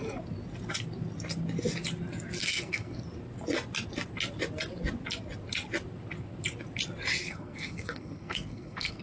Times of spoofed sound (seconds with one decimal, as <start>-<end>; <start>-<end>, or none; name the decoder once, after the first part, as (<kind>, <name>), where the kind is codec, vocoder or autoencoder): 2.4-3.0 (codec, SNAC); 7.2-9.0